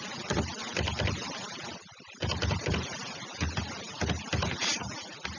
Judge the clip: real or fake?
real